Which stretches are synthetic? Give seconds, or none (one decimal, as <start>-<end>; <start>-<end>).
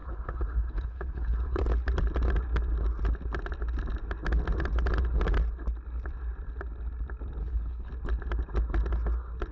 0.0-1.6; 7.4-7.9